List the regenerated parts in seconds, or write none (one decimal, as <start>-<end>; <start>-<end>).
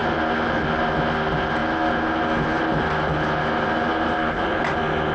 none